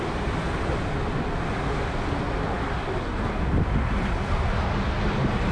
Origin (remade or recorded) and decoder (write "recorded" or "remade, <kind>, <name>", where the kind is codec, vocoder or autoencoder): recorded